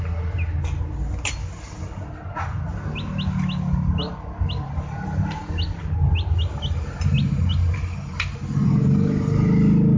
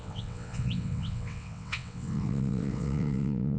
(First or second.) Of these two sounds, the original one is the first